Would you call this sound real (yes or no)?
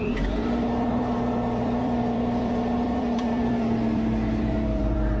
no